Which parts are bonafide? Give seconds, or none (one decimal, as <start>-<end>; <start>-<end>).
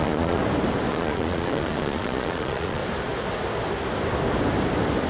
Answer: 0.4-0.9; 2.8-5.1